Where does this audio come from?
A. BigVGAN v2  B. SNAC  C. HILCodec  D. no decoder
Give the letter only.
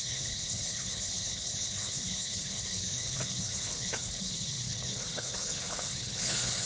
C